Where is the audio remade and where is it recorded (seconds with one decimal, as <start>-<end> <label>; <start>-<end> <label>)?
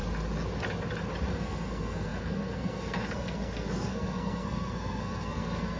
0.0-1.3 recorded; 1.3-5.8 remade